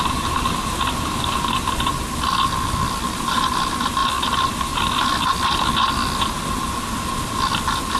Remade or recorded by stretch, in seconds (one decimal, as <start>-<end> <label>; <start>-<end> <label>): 0.0-8.0 recorded